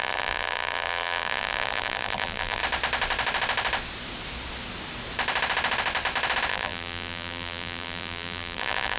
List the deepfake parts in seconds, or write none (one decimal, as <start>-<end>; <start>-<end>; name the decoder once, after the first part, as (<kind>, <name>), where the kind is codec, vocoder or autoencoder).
0.0-2.6 (vocoder, BigVGAN v2); 6.5-9.0